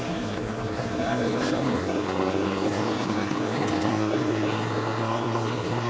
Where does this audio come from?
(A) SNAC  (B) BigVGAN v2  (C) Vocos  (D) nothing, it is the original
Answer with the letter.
A